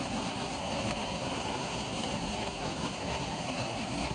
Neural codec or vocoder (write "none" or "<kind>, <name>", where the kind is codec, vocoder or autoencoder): codec, SNAC